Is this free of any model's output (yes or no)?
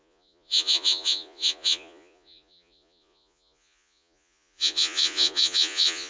no